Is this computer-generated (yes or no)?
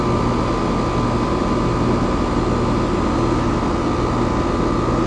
no